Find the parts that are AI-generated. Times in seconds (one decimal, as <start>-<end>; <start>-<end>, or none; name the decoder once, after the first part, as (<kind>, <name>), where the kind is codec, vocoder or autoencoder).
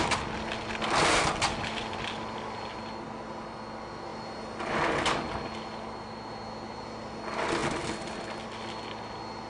none